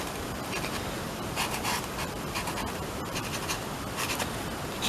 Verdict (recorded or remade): remade